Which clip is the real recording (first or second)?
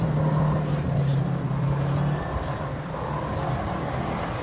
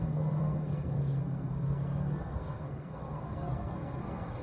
first